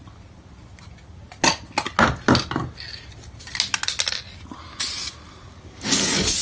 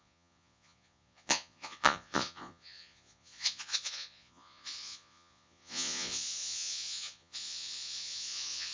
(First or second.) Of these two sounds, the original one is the first